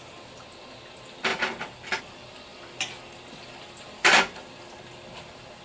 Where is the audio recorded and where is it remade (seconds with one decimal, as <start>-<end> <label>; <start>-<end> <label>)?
0.0-5.6 recorded